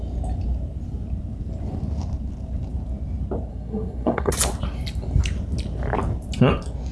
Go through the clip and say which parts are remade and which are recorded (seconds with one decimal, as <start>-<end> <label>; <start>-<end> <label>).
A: 0.0-3.5 recorded; 3.5-4.3 remade; 4.3-6.9 recorded